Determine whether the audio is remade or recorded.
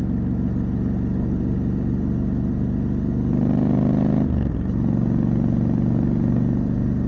recorded